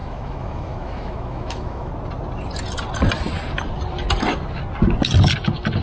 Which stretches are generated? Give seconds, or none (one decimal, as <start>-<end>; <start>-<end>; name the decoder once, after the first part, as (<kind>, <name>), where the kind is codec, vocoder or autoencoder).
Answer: 0.0-1.9 (autoencoder, DAC-VAE)